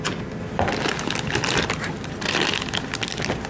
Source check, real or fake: real